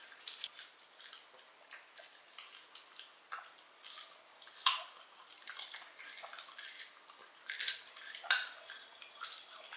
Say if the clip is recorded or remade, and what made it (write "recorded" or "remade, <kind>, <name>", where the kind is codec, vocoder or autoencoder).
recorded